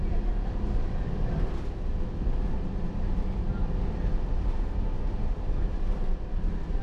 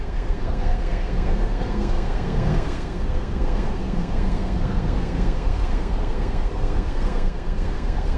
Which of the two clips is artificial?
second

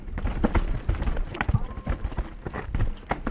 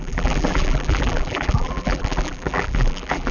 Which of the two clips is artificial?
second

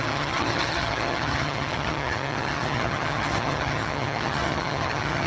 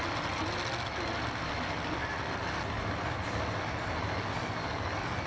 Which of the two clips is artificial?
first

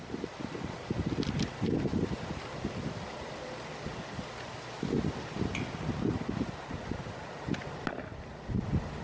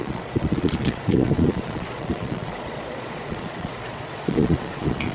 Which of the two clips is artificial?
second